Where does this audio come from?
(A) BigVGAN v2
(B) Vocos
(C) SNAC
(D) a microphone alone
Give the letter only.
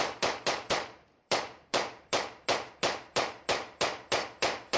A